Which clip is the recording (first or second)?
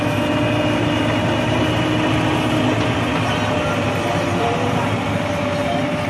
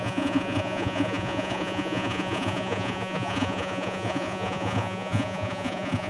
first